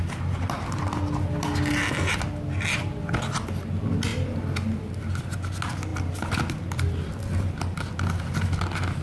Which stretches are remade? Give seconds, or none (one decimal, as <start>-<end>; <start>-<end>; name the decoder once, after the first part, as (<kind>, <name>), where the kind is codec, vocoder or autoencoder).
none